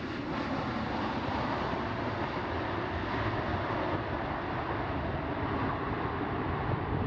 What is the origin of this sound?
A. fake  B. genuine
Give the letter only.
B